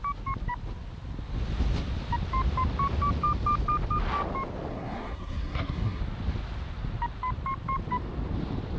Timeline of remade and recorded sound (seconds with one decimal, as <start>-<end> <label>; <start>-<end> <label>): 0.0-4.7 recorded; 4.7-6.0 remade; 6.0-8.8 recorded